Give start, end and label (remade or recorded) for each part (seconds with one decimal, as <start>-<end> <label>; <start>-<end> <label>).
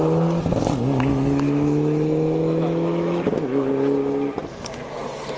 0.0-1.1 recorded; 1.1-3.7 remade; 3.7-5.4 recorded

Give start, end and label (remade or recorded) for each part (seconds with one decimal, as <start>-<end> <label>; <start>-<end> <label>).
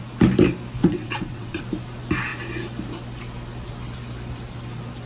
0.0-0.8 recorded; 0.8-1.6 remade; 1.6-5.1 recorded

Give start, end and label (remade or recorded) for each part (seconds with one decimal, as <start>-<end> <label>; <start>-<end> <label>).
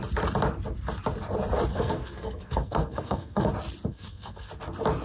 0.0-1.7 recorded; 1.7-3.5 remade; 3.5-3.9 recorded; 3.9-4.5 remade; 4.5-5.0 recorded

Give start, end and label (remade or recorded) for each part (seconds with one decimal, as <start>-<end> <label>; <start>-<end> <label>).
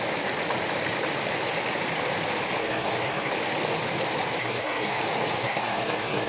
0.0-2.6 recorded; 2.6-3.3 remade; 3.3-4.4 recorded; 4.4-5.0 remade; 5.0-5.4 recorded; 5.4-6.3 remade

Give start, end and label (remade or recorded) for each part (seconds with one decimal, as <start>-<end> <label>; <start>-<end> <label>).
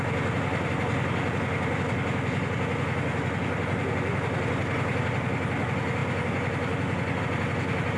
0.0-8.0 recorded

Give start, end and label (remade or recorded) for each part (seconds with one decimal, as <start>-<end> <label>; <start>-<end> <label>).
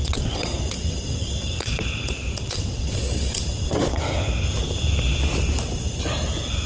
0.0-4.0 remade; 4.0-6.7 recorded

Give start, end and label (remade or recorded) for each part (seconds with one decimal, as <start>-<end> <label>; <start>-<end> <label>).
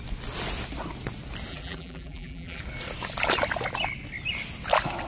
0.0-1.5 recorded; 1.5-2.6 remade; 2.6-5.1 recorded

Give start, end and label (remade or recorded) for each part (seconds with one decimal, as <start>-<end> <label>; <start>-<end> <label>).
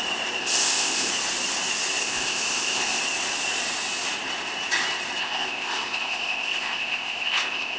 0.0-0.4 recorded; 0.4-1.1 remade; 1.1-2.0 recorded; 2.0-3.0 remade; 3.0-5.2 recorded; 5.2-7.8 remade